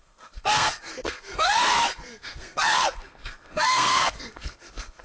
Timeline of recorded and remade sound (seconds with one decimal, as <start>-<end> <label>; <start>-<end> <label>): 0.0-5.0 remade